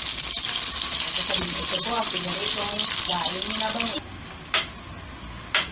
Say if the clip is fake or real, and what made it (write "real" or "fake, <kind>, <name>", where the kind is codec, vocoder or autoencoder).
real